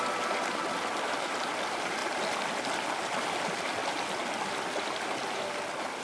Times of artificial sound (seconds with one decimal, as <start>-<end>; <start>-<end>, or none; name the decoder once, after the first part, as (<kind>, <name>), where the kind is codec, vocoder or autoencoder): none